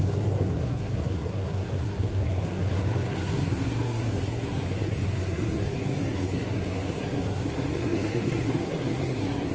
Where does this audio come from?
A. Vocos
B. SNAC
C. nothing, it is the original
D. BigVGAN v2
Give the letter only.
B